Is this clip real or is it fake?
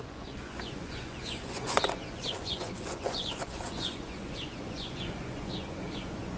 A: fake